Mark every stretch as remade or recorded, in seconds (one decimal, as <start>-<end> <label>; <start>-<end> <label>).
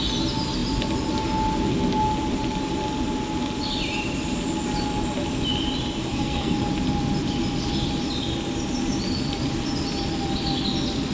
0.0-6.0 recorded; 6.0-6.6 remade; 6.6-11.1 recorded